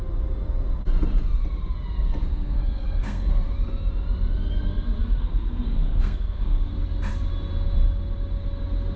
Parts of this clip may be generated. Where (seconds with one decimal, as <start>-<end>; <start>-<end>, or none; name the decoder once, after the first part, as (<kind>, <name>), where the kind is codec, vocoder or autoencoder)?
2.2-3.3 (codec, SNAC); 5.0-6.7